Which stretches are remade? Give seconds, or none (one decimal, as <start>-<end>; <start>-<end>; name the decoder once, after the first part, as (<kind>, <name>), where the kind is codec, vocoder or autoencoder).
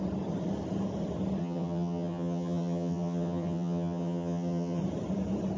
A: 1.4-4.8 (vocoder, HiFi-GAN)